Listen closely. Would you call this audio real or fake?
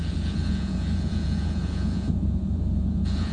fake